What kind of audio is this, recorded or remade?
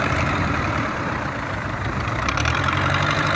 remade